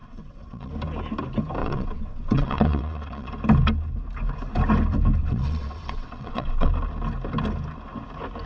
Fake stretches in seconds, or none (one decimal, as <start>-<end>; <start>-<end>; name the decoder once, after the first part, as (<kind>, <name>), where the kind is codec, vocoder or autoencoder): 0.0-0.7 (vocoder, WaveNeXt); 1.6-3.3; 5.2-6.7